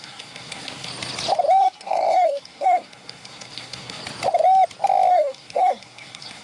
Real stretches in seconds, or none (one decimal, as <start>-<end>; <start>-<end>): 0.9-1.6; 4.0-5.1